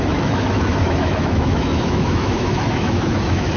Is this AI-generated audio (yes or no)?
yes